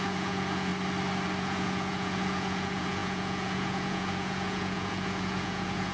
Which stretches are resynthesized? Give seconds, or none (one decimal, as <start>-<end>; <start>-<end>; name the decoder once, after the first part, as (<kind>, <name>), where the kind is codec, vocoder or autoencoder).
0.0-0.7 (vocoder, Vocos); 1.4-5.9